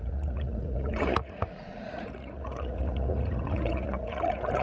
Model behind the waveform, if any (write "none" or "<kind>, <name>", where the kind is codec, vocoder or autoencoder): vocoder, Vocos